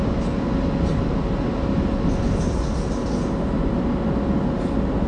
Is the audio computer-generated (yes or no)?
no